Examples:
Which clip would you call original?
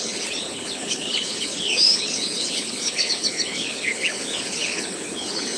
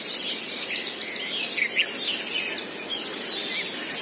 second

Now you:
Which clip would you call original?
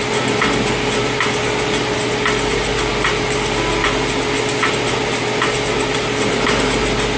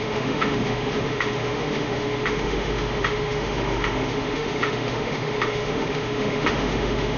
first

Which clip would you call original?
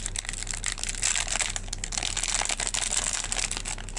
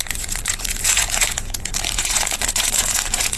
first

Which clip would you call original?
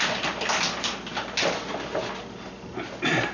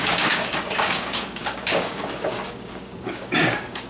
first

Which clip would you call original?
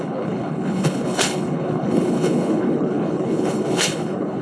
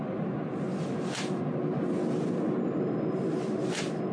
second